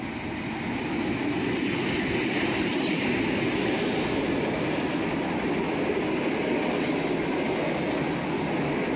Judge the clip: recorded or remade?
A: recorded